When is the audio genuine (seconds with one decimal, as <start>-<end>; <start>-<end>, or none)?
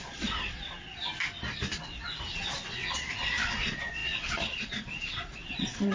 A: 0.9-2.3